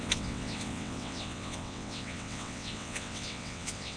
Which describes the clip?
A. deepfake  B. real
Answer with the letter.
A